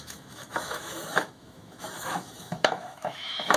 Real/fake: fake